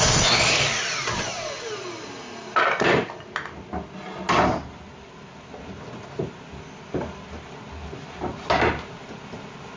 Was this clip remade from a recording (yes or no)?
no